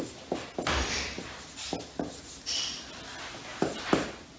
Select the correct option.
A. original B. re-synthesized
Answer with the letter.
A